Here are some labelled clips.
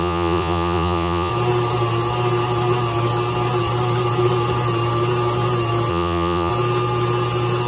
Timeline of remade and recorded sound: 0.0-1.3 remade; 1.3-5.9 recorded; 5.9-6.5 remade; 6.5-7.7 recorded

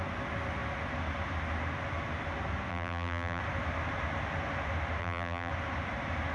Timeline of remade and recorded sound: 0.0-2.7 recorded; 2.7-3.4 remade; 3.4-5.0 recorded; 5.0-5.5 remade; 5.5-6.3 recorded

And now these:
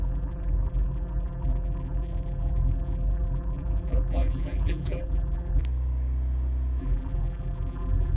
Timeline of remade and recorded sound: 0.0-5.6 remade; 5.6-6.8 recorded; 6.8-8.2 remade